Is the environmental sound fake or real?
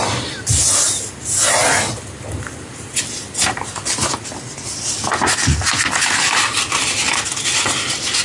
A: real